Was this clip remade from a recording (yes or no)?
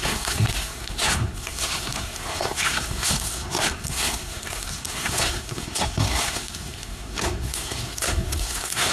yes